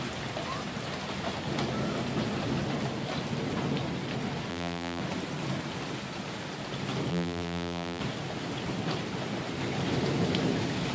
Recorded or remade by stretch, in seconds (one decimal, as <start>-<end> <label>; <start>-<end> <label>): 0.0-4.5 recorded; 4.5-5.0 remade; 5.0-7.1 recorded; 7.1-8.0 remade; 8.0-10.9 recorded